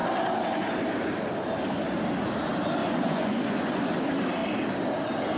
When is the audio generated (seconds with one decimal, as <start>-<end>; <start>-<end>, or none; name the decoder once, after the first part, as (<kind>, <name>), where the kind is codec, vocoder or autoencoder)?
2.8-4.0 (vocoder, Vocos)